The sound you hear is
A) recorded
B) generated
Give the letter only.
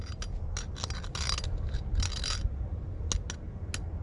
A